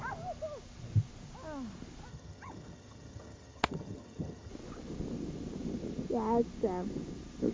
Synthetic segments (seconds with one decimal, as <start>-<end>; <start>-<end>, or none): 2.1-4.5